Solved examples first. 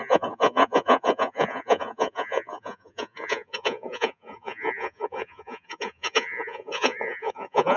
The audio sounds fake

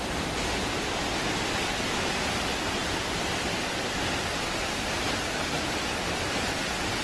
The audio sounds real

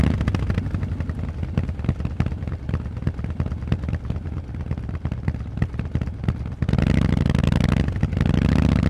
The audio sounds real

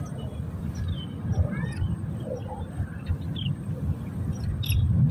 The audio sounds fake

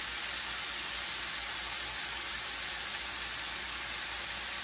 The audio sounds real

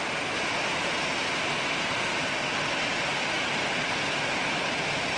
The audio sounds real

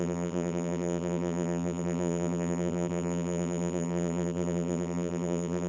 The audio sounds fake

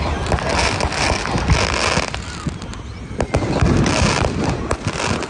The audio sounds real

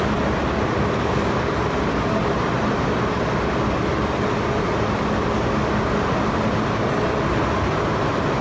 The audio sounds real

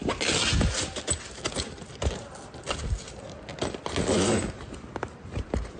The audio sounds real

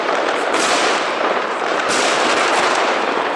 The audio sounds fake